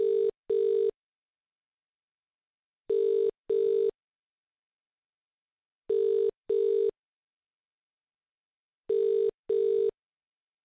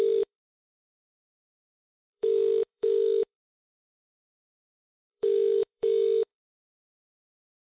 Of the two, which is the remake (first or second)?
second